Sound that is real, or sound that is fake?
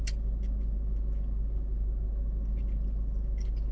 real